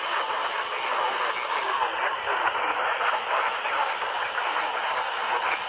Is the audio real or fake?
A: real